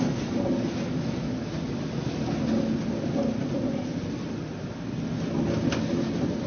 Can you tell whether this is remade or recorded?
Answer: recorded